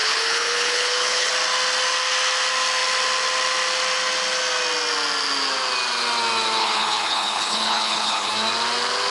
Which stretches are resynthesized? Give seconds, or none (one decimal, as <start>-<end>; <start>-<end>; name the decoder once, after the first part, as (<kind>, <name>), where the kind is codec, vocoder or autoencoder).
0.0-1.3 (codec, HILCodec); 6.6-8.3